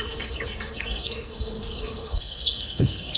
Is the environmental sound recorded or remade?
remade